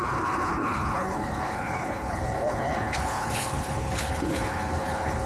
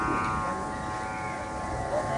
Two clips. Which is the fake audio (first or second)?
first